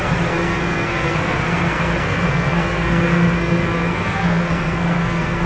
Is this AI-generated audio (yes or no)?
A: yes